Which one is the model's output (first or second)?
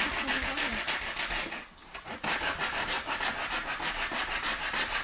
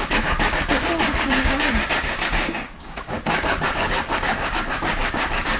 second